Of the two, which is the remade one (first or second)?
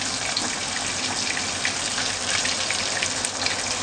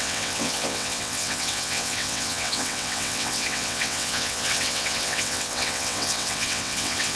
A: second